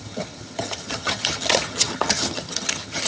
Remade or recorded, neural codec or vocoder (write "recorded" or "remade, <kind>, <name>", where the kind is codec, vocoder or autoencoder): remade, vocoder, HiFi-GAN